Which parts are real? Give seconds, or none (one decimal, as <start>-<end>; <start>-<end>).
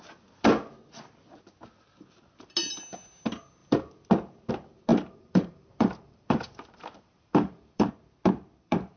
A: 0.0-4.9; 7.9-9.0